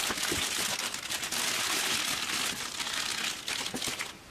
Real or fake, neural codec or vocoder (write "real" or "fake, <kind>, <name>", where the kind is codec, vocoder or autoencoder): real